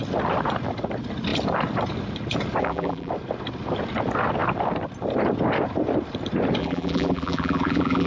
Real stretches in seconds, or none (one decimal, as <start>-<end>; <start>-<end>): 0.0-2.6; 3.1-6.6